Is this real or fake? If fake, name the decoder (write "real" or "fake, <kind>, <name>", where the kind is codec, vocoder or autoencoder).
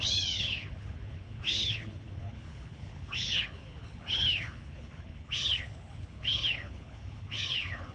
fake, codec, HILCodec